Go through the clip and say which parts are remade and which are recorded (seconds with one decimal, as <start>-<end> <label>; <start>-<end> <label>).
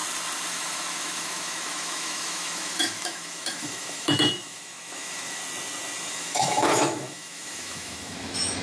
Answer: 0.0-0.5 recorded; 0.5-5.4 remade; 5.4-6.1 recorded; 6.1-8.6 remade